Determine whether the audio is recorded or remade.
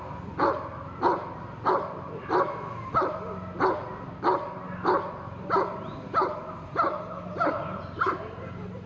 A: recorded